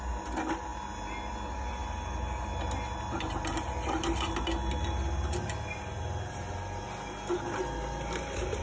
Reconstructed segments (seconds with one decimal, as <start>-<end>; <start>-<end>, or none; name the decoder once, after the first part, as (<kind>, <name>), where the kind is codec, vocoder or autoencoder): none